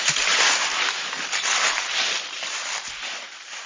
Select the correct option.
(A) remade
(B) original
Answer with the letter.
B